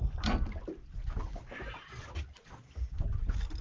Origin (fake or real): real